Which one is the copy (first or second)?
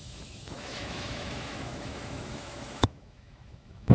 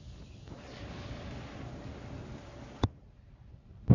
first